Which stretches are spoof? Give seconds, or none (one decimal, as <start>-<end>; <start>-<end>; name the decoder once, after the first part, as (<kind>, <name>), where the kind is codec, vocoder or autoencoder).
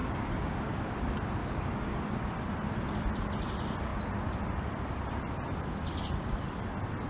0.0-0.8 (codec, DAC); 1.4-2.0